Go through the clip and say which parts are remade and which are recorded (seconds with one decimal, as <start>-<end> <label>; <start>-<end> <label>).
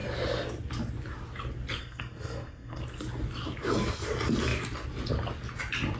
0.0-1.8 recorded; 1.8-2.8 remade; 2.8-6.0 recorded